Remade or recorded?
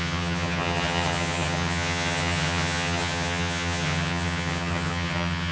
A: remade